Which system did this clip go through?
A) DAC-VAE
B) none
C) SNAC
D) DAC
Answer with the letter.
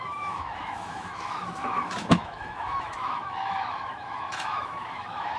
A